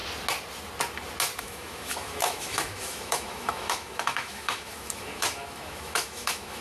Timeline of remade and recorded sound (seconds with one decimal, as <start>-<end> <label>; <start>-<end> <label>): 0.0-1.4 recorded; 1.4-6.6 remade